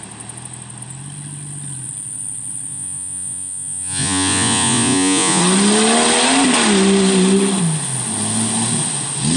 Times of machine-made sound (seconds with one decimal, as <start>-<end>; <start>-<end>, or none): 2.7-5.4